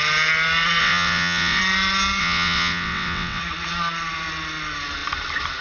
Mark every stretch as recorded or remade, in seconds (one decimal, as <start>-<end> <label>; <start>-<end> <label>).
0.0-0.8 recorded; 0.8-1.6 remade; 1.6-2.2 recorded; 2.2-3.4 remade; 3.4-5.6 recorded